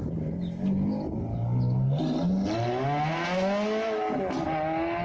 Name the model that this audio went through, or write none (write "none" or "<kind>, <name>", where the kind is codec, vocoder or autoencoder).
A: none